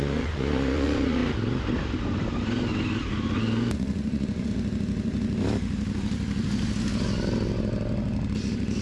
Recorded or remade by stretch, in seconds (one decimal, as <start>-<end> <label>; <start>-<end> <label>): 0.0-1.2 remade; 1.2-3.4 recorded; 3.4-4.5 remade; 4.5-8.8 recorded

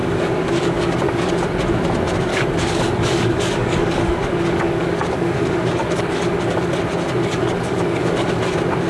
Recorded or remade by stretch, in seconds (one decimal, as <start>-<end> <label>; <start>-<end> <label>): 0.0-1.3 remade; 1.3-2.3 recorded; 2.3-6.7 remade; 6.7-7.2 recorded; 7.2-8.4 remade; 8.4-8.9 recorded

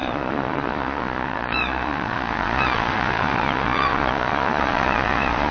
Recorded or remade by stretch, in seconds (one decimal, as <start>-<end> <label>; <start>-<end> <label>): 0.0-5.5 remade

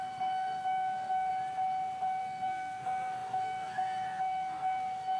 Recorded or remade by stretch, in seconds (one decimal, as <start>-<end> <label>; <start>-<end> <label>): 0.0-1.3 remade; 1.3-2.2 recorded; 2.2-5.2 remade

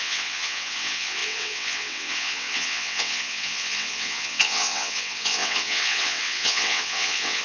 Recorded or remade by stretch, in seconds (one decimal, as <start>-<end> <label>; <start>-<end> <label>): 0.0-7.4 remade

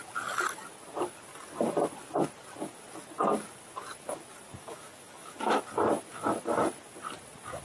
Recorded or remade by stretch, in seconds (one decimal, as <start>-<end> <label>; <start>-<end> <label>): 0.0-4.6 recorded; 4.6-5.6 remade; 5.6-7.6 recorded

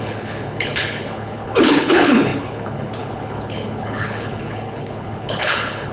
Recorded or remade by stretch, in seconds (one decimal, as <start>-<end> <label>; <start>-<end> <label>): 0.0-5.9 remade

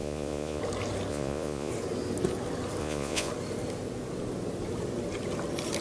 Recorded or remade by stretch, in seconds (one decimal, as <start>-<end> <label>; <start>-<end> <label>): 0.0-0.6 remade; 0.6-1.1 recorded; 1.1-1.7 remade; 1.7-2.8 recorded; 2.8-3.3 remade; 3.3-5.8 recorded